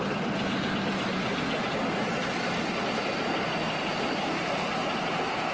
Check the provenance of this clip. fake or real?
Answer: real